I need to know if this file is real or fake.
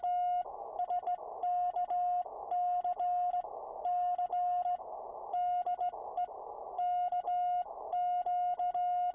real